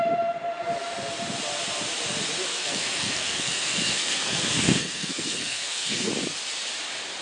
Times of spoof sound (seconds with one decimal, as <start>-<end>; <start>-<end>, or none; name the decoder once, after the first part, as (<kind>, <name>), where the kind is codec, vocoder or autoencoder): 2.5-6.1 (codec, SNAC)